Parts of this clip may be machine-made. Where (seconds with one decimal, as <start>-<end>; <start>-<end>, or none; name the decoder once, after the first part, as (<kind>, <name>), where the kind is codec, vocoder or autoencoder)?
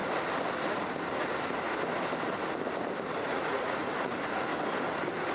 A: 3.2-4.5 (vocoder, Vocos)